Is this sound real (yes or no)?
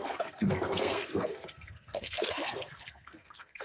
no